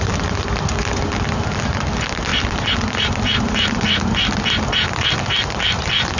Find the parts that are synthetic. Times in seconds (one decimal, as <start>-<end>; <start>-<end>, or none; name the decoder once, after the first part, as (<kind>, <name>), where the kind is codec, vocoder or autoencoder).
none